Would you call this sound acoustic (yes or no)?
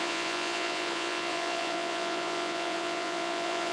no